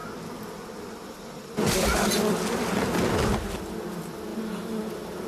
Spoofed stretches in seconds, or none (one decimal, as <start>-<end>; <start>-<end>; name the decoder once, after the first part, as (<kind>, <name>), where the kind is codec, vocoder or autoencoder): none